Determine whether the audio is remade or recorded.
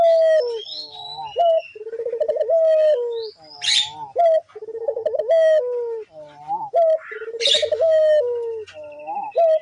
recorded